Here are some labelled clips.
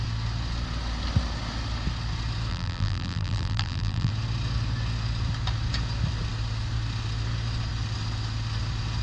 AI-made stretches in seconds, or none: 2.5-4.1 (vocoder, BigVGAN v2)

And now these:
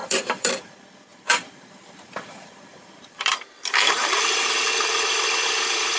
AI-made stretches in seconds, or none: 0.0-0.5 (vocoder, BigVGAN v2); 1.1-4.7

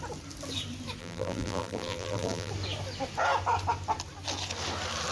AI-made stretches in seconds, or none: 1.0-2.5 (vocoder, BigVGAN v2)

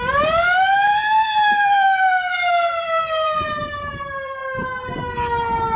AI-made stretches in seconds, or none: 0.0-4.4 (vocoder, BigVGAN v2)

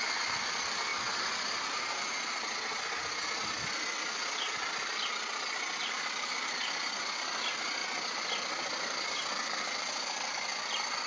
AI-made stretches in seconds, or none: 0.0-0.9 (vocoder, BigVGAN v2); 5.9-11.1